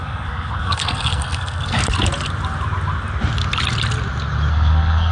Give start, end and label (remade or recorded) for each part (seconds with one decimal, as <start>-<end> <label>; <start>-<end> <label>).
0.0-1.8 remade; 1.8-4.5 recorded; 4.5-5.1 remade